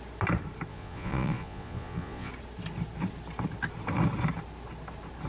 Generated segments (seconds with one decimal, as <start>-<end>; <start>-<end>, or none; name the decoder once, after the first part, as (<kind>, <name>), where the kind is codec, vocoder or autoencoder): 0.7-2.3 (vocoder, Vocos)